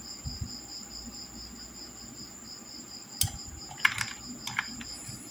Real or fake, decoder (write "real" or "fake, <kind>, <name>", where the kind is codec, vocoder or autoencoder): real